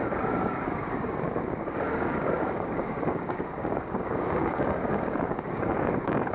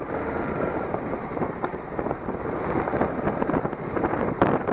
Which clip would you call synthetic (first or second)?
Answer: first